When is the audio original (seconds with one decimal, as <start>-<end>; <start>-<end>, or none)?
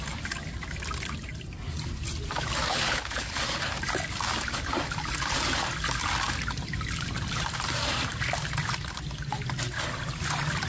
0.0-2.7; 3.4-10.7